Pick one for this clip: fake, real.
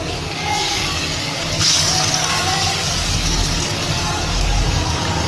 fake